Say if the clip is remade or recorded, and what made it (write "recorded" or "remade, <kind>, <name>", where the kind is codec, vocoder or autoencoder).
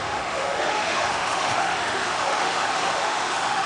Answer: remade, autoencoder, DAC-VAE